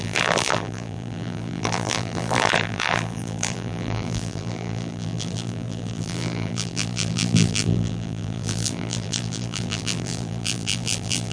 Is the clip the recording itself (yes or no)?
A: no